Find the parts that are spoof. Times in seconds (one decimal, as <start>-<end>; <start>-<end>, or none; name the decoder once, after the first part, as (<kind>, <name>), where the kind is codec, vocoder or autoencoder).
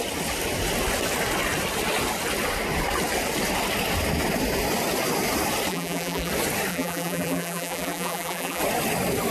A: 5.7-6.3 (vocoder, BigVGAN v2); 6.7-8.6